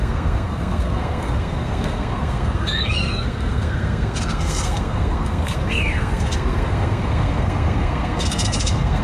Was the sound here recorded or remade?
remade